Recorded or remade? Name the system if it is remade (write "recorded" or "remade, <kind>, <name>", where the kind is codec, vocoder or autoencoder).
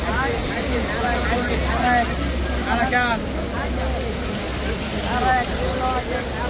recorded